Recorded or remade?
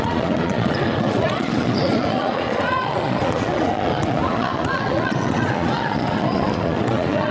remade